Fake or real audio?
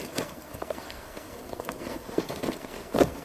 fake